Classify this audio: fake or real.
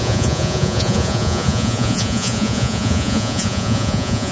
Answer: fake